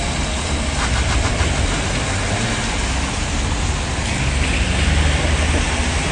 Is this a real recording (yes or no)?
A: yes